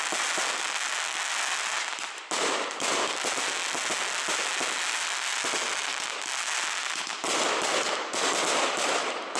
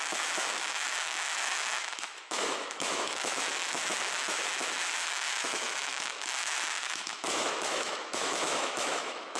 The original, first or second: first